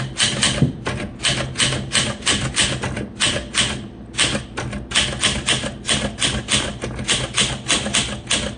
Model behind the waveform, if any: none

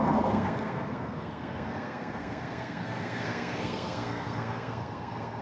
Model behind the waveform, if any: codec, SNAC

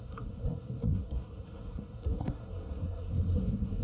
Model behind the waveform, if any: codec, SNAC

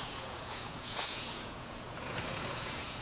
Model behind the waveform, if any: vocoder, Vocos